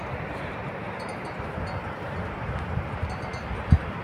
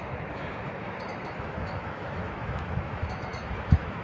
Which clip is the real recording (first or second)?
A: first